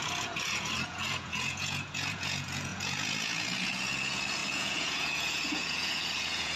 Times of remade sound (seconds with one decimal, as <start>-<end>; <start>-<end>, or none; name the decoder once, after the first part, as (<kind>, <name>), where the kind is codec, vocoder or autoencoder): 0.0-6.6 (vocoder, Vocos)